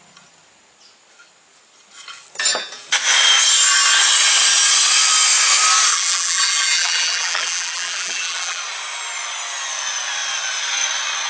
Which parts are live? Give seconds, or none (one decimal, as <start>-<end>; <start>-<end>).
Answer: 0.0-5.9; 8.6-11.3

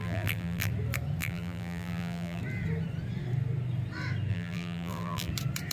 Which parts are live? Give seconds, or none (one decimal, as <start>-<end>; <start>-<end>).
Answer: 0.7-1.2; 2.4-4.3; 5.3-5.7